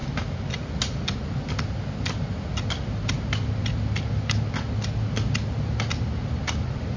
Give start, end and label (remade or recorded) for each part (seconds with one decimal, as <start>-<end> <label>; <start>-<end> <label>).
0.0-7.0 recorded